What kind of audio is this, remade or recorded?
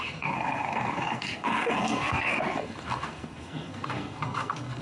remade